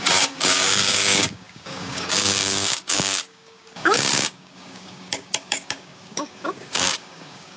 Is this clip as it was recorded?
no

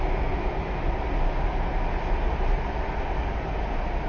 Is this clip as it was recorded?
yes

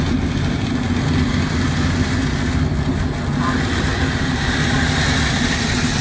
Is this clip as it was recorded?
yes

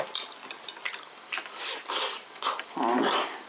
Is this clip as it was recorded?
yes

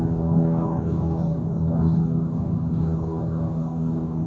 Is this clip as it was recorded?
no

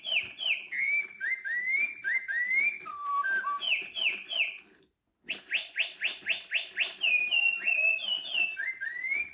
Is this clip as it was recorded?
yes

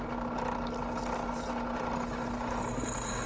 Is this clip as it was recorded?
yes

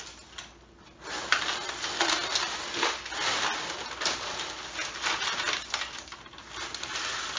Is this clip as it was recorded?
yes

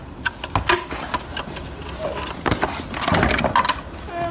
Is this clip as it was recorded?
yes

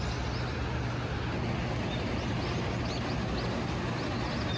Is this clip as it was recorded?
yes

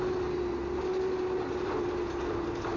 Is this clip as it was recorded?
yes